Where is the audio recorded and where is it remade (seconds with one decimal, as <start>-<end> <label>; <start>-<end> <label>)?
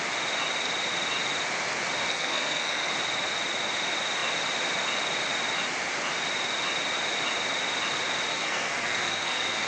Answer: 0.0-2.0 recorded; 2.0-2.9 remade; 2.9-8.3 recorded; 8.3-9.7 remade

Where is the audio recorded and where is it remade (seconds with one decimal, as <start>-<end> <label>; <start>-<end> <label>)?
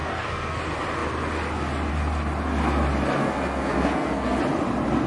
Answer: 0.0-0.6 remade; 0.6-3.2 recorded; 3.2-4.4 remade; 4.4-5.1 recorded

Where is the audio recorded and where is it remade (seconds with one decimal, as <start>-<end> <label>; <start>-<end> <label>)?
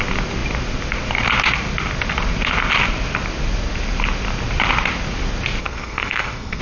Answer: 0.0-5.6 recorded; 5.6-6.6 remade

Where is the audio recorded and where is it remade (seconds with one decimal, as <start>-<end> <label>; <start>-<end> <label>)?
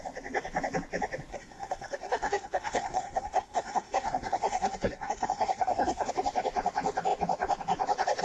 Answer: 0.0-1.3 recorded; 1.3-6.1 remade; 6.1-8.2 recorded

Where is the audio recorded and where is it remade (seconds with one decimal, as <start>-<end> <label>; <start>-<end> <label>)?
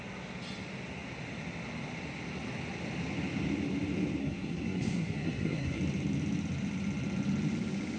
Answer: 0.0-4.2 recorded; 4.2-5.8 remade; 5.8-8.0 recorded